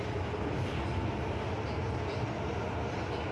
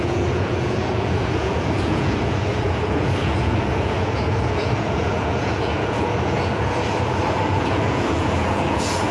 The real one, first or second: first